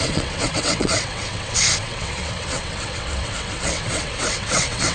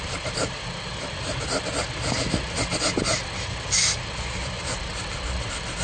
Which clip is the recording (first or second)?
second